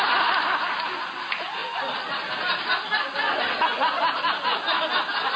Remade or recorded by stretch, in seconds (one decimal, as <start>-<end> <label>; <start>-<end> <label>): 0.0-5.4 recorded